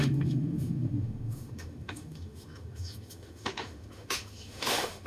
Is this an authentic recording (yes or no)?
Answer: no